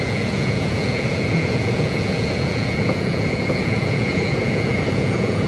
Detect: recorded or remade remade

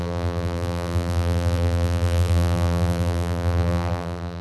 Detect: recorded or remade remade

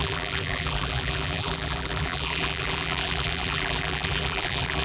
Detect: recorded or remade remade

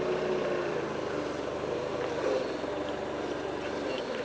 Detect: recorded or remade recorded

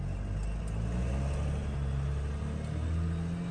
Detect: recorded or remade recorded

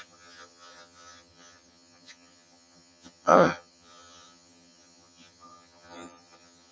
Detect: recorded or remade remade